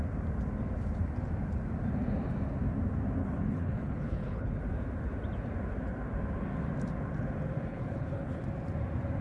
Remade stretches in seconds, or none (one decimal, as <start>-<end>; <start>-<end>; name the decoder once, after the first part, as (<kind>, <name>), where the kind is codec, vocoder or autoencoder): 3.2-4.6 (codec, HILCodec); 7.7-8.4